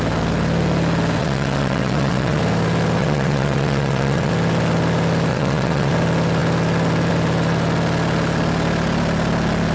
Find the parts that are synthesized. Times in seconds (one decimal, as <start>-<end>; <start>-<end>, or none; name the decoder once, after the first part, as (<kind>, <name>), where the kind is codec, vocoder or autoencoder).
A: 1.2-2.4 (vocoder, WaveNeXt); 3.0-4.3; 5.3-5.9